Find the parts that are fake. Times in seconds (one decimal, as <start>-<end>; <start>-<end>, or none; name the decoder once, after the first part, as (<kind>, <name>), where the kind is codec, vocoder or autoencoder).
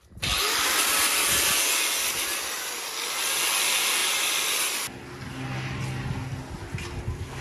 4.0-4.6 (vocoder, BigVGAN v2)